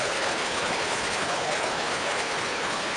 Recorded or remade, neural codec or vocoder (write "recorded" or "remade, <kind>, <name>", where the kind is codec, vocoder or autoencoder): remade, codec, HILCodec